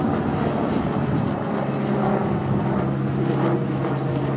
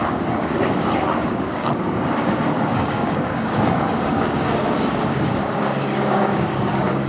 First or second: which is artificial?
second